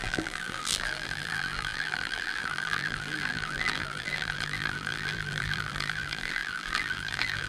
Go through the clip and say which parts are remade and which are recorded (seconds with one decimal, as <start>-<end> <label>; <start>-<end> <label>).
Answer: 0.0-7.5 remade